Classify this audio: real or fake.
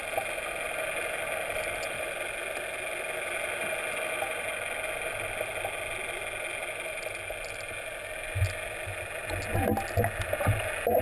real